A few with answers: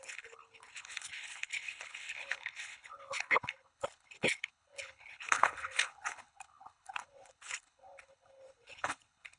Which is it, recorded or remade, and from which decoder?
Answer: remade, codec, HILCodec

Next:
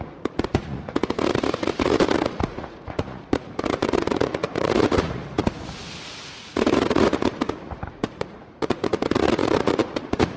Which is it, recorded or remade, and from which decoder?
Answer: remade, vocoder, Vocos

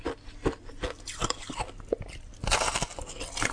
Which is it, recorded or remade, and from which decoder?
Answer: recorded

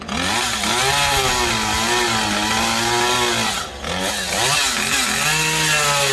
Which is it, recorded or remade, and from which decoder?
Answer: recorded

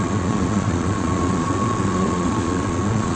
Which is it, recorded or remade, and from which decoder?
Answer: remade, vocoder, Vocos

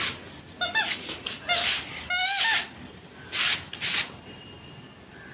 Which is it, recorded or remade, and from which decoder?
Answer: recorded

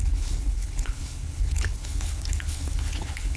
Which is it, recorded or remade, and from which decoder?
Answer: remade, codec, HILCodec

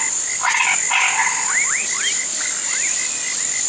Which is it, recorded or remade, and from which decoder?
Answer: recorded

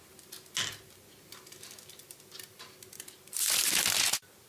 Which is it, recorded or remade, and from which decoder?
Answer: recorded